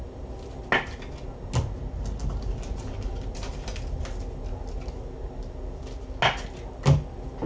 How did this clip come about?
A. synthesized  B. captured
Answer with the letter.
B